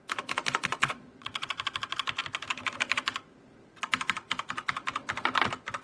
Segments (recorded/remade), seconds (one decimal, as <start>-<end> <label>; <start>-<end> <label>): 0.0-0.7 recorded; 0.7-1.5 remade; 1.5-5.8 recorded